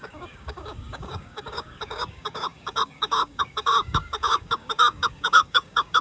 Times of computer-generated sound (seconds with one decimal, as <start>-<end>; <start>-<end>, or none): 0.0-6.0